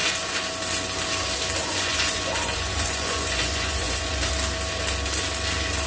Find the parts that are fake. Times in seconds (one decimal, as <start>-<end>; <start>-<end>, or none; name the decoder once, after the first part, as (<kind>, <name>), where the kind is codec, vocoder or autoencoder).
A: 1.6-4.3 (vocoder, Vocos)